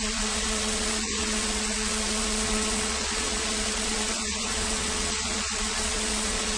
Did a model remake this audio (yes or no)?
yes